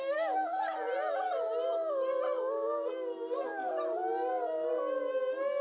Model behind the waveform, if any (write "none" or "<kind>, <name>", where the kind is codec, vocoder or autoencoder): none